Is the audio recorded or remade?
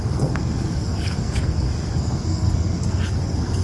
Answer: remade